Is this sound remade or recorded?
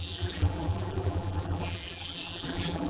remade